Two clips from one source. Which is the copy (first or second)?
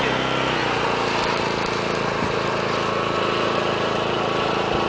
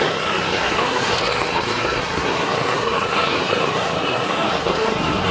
second